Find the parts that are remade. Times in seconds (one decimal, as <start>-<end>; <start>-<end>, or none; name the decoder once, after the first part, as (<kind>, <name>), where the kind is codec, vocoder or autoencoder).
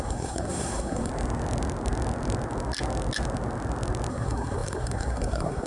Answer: 0.0-1.1 (codec, SNAC); 4.1-5.7